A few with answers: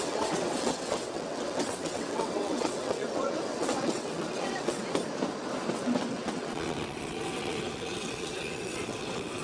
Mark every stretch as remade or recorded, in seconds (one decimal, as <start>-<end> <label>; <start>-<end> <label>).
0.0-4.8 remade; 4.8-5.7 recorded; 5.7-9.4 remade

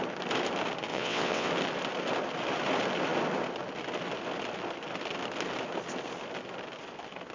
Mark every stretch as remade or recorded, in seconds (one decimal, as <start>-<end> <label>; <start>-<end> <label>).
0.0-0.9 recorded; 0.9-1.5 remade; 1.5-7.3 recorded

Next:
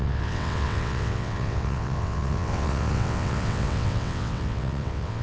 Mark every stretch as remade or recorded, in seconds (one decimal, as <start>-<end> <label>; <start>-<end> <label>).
0.0-5.2 remade

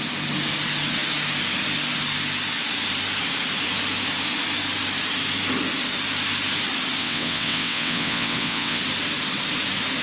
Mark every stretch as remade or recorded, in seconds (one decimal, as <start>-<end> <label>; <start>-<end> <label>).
0.0-7.0 recorded; 7.0-8.8 remade; 8.8-10.0 recorded

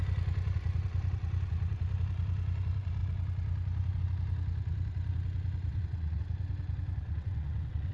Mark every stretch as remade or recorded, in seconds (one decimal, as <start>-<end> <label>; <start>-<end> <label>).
0.0-5.7 recorded; 5.7-6.2 remade; 6.2-7.0 recorded; 7.0-7.9 remade

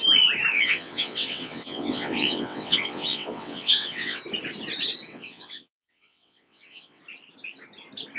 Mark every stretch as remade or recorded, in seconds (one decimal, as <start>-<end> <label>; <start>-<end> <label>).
0.0-0.5 recorded; 0.5-4.2 remade; 4.2-5.1 recorded; 5.1-7.0 remade; 7.0-8.2 recorded